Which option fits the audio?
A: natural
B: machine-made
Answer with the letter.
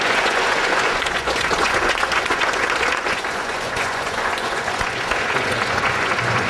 B